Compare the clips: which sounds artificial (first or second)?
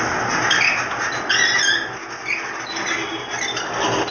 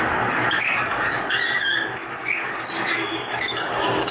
second